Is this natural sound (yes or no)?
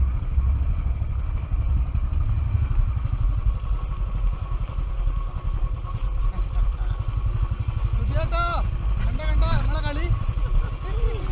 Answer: yes